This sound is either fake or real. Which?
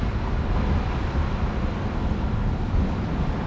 real